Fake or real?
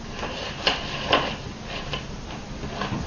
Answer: real